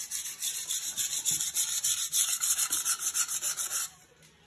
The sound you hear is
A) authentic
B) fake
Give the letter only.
A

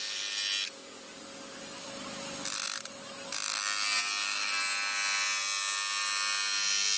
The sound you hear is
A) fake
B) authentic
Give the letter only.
B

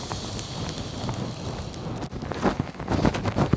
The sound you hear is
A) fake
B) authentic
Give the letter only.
B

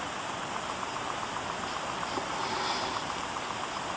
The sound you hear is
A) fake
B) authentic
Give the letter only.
B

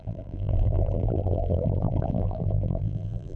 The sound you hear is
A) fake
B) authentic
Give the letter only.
A